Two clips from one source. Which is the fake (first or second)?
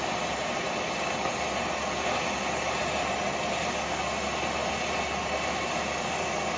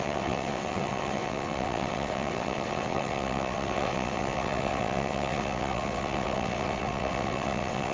second